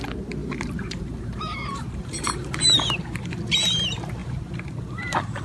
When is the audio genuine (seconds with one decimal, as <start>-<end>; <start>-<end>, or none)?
0.0-0.4; 3.4-4.2